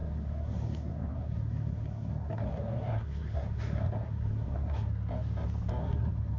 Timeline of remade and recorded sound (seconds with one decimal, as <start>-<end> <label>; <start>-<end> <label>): 0.0-4.9 remade; 4.9-5.8 recorded; 5.8-6.4 remade